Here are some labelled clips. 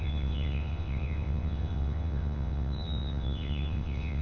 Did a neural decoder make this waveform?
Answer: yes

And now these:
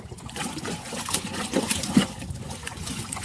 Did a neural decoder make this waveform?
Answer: yes